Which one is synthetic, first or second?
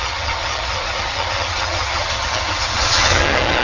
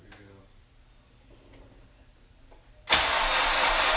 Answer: first